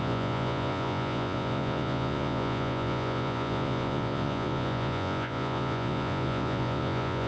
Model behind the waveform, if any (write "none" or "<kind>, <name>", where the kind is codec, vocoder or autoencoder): vocoder, Vocos